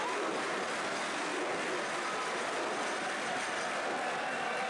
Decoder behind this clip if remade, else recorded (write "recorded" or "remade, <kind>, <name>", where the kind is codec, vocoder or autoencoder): recorded